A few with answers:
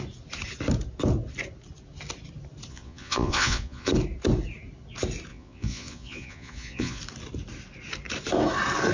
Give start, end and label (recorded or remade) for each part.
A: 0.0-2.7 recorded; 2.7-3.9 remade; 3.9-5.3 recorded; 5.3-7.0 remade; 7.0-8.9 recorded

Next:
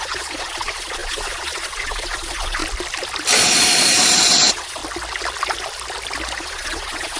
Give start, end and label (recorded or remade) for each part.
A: 0.0-2.6 remade; 2.6-3.4 recorded; 3.4-4.8 remade; 4.8-6.4 recorded; 6.4-7.2 remade

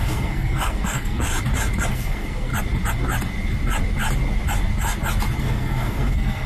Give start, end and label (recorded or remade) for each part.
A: 0.0-1.3 remade; 1.3-1.9 recorded; 1.9-2.5 remade; 2.5-5.4 recorded; 5.4-6.5 remade

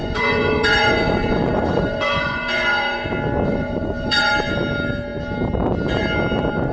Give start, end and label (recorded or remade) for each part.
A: 0.0-3.1 remade; 3.1-3.5 recorded; 3.5-4.3 remade; 4.3-6.7 recorded

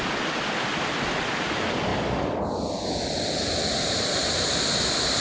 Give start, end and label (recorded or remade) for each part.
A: 0.0-5.2 recorded

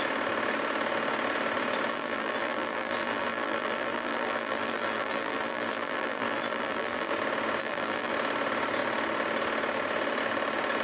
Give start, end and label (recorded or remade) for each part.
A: 0.0-1.9 recorded; 1.9-7.1 remade; 7.1-7.6 recorded; 7.6-8.1 remade; 8.1-10.8 recorded

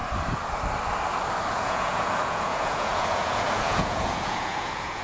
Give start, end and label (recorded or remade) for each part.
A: 0.0-1.5 recorded; 1.5-5.0 remade

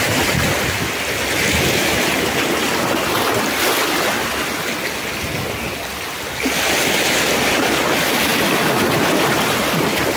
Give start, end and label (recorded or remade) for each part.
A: 0.0-10.2 recorded